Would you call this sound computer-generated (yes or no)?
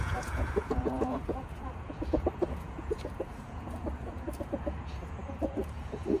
yes